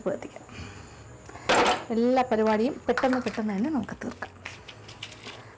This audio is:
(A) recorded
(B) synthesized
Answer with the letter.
A